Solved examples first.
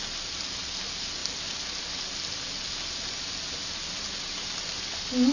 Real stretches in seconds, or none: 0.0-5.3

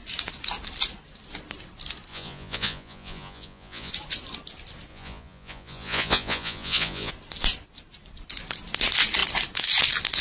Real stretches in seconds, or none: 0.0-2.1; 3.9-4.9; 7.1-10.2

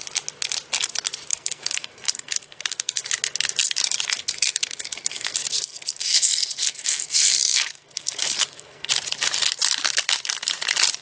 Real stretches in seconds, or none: 0.0-1.3; 3.0-4.2; 8.9-11.0

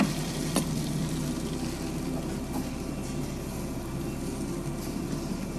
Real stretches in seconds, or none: 1.0-4.1